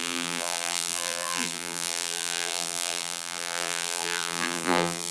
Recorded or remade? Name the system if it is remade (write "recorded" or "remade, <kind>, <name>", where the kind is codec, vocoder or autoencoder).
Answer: remade, vocoder, BigVGAN v2